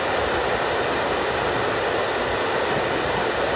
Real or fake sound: real